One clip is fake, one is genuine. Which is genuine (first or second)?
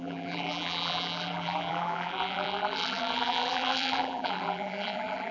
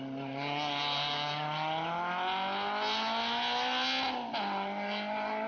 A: second